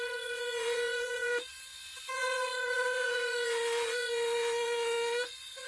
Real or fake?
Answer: fake